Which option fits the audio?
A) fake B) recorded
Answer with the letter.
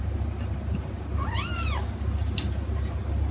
B